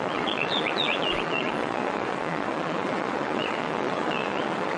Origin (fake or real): fake